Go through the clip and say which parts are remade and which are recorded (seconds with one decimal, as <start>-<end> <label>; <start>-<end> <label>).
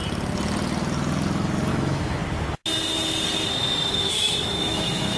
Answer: 0.0-1.7 recorded; 1.7-2.2 remade; 2.2-3.9 recorded; 3.9-5.2 remade